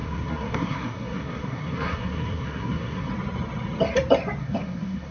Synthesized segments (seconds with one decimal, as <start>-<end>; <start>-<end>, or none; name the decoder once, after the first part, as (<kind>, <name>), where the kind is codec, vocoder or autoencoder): 0.0-3.1 (codec, SNAC); 4.4-5.1